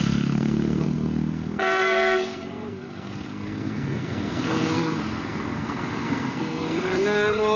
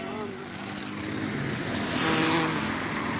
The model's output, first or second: first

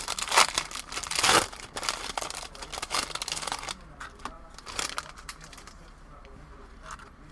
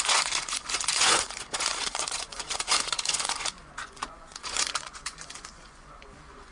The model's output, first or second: second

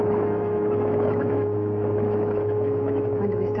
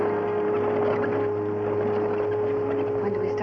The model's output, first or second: first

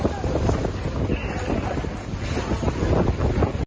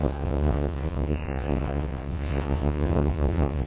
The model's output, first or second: second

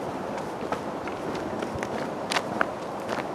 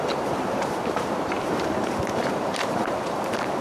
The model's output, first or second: second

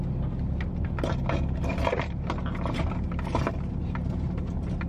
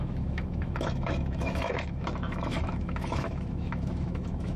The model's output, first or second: second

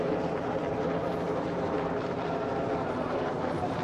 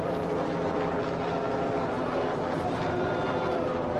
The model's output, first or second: first